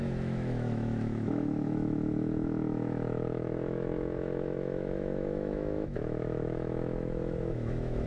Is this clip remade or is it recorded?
remade